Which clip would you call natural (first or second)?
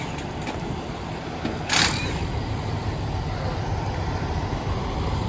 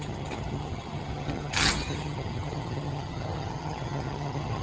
first